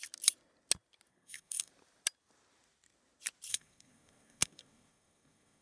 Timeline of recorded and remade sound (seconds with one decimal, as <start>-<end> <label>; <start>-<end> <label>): 0.0-1.1 recorded; 1.1-1.7 remade; 1.7-3.5 recorded; 3.5-5.6 remade